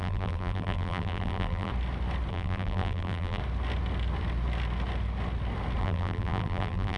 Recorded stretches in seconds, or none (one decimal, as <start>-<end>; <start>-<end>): 1.7-2.3; 3.4-5.8